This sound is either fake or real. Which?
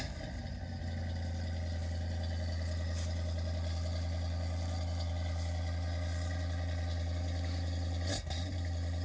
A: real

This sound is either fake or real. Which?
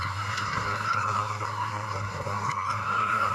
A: fake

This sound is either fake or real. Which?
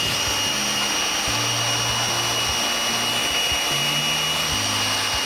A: real